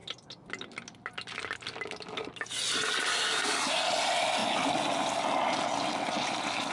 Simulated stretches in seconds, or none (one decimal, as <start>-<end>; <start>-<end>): none